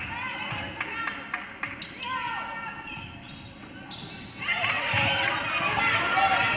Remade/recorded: recorded